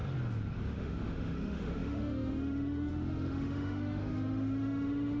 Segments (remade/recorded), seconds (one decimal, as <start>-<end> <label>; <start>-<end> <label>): 0.0-0.7 recorded; 0.7-5.2 remade